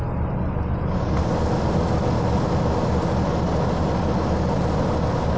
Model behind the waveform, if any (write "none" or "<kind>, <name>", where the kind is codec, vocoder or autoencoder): none